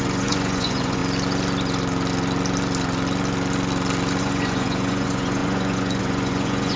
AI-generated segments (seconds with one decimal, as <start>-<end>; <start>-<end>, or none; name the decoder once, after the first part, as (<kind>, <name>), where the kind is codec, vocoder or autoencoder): 0.0-1.0 (vocoder, Vocos); 4.2-6.8